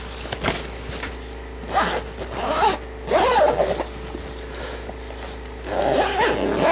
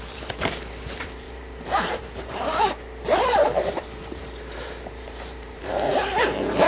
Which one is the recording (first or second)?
first